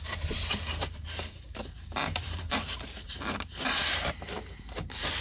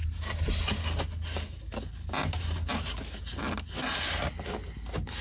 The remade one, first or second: first